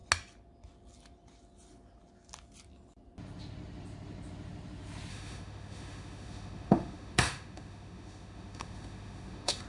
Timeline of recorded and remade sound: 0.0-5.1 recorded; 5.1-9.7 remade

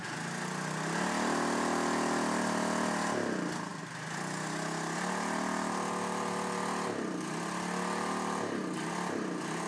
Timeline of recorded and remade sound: 0.0-9.7 recorded